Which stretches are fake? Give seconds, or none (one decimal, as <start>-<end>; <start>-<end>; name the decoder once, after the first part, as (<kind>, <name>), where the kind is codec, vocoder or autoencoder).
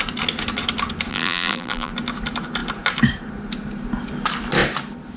1.1-1.9 (vocoder, BigVGAN v2)